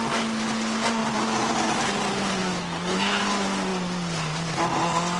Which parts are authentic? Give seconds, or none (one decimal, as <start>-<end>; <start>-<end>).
0.0-2.4; 3.2-5.2